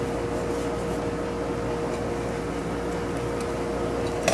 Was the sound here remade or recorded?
recorded